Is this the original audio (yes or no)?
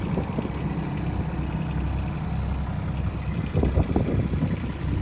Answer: yes